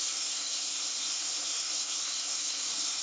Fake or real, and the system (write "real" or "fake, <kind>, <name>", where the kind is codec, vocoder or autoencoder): fake, codec, SNAC